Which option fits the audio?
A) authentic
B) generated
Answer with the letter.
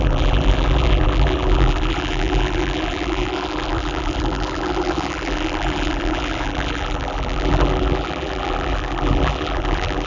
B